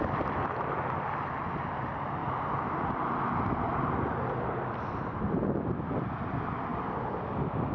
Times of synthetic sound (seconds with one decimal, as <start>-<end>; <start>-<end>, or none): 2.2-5.4